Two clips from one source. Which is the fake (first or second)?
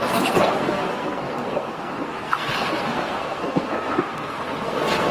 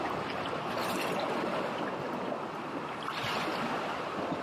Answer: first